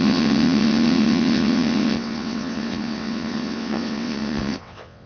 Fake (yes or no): yes